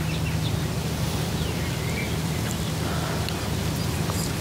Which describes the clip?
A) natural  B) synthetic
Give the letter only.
B